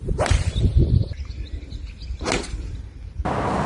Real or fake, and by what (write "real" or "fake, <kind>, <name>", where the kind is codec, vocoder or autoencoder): real